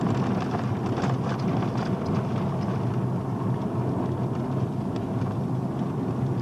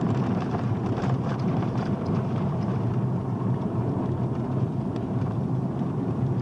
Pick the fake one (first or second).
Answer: second